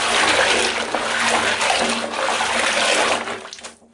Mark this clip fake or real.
real